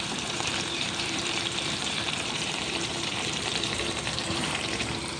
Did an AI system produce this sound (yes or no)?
yes